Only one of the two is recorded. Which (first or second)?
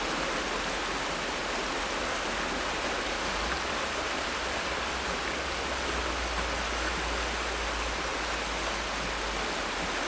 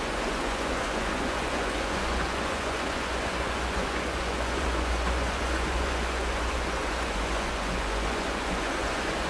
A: first